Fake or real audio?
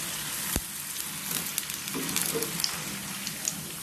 real